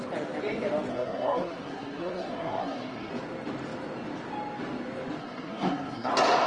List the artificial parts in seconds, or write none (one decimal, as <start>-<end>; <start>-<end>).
0.9-3.1; 5.2-6.1